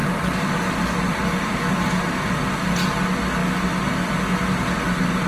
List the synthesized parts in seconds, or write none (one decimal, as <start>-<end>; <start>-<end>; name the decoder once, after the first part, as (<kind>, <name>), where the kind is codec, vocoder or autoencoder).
0.0-2.1 (vocoder, BigVGAN v2)